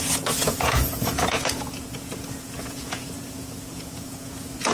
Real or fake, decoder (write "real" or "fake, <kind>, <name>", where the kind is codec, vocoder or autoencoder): fake, vocoder, Vocos